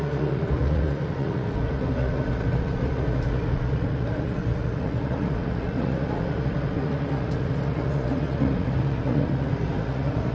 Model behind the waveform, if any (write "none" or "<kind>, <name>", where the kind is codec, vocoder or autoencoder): vocoder, Vocos